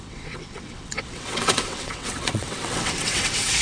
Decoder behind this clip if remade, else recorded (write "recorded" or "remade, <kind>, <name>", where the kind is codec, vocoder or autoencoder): remade, vocoder, WaveNeXt